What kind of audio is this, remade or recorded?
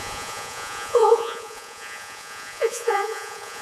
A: remade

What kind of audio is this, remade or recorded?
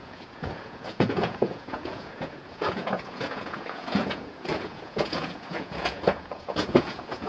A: remade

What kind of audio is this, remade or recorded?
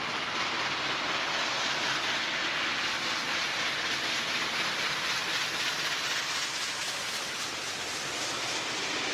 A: recorded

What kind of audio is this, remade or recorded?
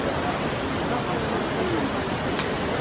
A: recorded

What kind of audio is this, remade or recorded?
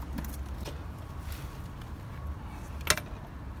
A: recorded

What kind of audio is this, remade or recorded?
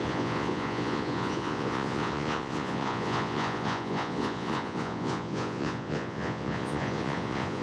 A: remade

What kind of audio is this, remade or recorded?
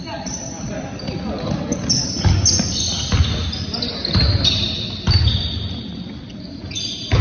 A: recorded